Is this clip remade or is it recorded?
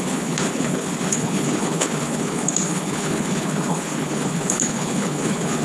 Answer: remade